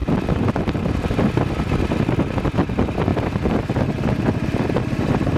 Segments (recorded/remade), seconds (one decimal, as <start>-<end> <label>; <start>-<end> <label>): 0.0-3.1 remade; 3.1-4.8 recorded; 4.8-5.4 remade